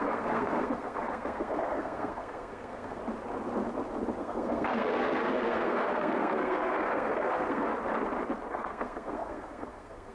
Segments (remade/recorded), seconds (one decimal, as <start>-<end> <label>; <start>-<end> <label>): 0.0-3.0 remade; 3.0-4.2 recorded; 4.2-7.7 remade; 7.7-8.5 recorded; 8.5-10.1 remade